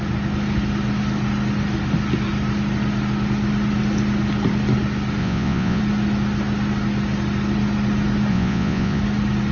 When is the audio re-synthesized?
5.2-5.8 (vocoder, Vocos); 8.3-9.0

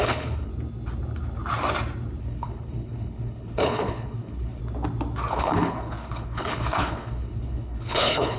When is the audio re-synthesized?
0.0-0.5 (codec, HILCodec); 2.2-4.6; 5.3-8.4

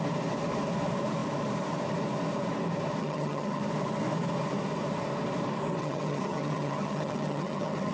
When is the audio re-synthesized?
3.0-3.6 (vocoder, HiFi-GAN); 5.8-7.9

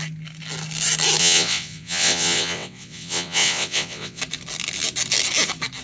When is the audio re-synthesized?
1.2-4.2 (vocoder, WaveNeXt)

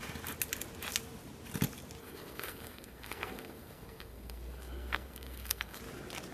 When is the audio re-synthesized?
2.0-5.8 (codec, SNAC)

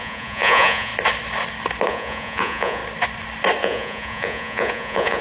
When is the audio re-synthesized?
0.0-0.9 (vocoder, Vocos); 1.9-2.8; 3.6-5.2

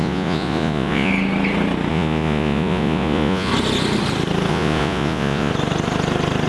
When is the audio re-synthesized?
0.0-1.1 (vocoder, Vocos); 1.9-3.5; 4.5-5.5

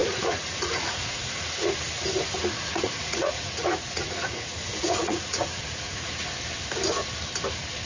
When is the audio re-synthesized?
0.0-1.7 (vocoder, Vocos); 2.4-6.1